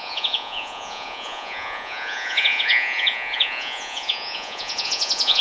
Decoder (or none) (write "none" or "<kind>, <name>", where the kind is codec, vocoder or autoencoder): vocoder, Vocos